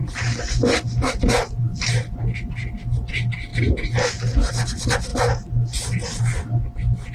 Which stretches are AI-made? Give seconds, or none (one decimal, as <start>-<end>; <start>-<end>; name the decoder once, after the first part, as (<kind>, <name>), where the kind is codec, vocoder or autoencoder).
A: none